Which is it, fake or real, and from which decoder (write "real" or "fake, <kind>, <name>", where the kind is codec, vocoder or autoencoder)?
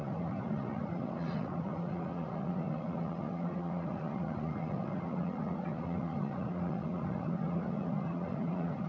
fake, vocoder, Vocos